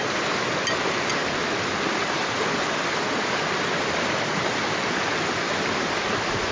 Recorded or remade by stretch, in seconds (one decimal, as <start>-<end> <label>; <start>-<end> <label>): 0.0-6.5 recorded